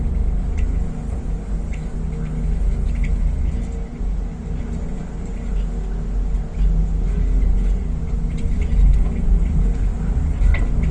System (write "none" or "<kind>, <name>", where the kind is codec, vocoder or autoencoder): none